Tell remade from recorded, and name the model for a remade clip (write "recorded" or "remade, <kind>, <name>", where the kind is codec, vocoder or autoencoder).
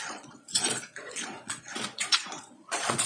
remade, vocoder, Vocos